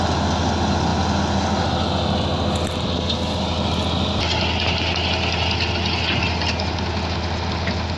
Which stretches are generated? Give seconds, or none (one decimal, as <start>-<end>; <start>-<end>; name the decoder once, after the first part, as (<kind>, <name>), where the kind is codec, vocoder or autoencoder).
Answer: none